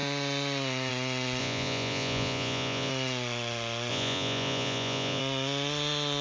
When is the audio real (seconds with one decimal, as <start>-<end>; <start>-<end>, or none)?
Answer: 0.0-1.4; 2.9-3.9; 5.2-6.2